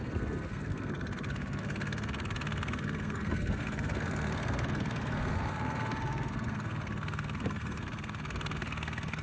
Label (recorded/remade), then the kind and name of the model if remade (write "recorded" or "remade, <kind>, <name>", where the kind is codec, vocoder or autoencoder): remade, codec, SNAC